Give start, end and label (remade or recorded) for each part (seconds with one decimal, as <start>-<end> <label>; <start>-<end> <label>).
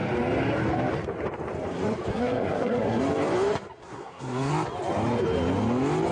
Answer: 0.0-2.1 recorded; 2.1-3.0 remade; 3.0-3.8 recorded; 3.8-4.5 remade; 4.5-6.1 recorded